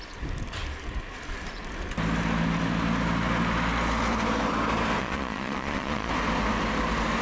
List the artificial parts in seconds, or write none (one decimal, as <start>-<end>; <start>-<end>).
5.0-6.1